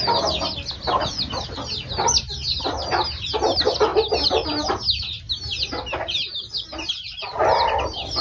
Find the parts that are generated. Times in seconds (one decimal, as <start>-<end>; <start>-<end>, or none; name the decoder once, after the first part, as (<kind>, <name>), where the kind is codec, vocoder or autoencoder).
none